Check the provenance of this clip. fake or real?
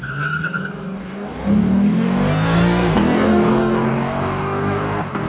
fake